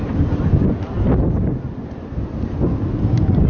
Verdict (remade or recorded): recorded